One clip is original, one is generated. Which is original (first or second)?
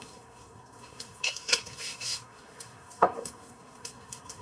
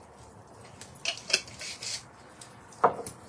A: second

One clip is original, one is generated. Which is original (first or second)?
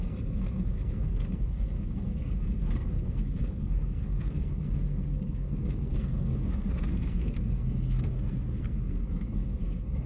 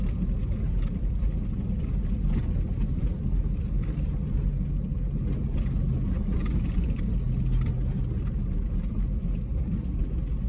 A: second